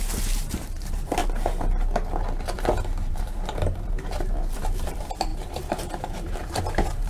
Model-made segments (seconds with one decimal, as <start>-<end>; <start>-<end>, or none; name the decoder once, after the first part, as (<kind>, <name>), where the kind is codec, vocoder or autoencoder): 0.0-1.2 (vocoder, BigVGAN v2); 3.1-7.1